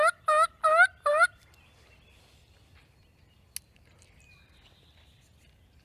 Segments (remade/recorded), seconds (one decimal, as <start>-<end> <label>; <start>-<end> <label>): 0.0-5.8 recorded